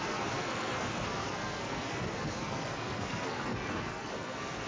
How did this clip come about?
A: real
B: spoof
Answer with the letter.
B